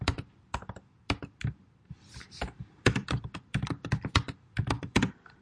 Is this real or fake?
fake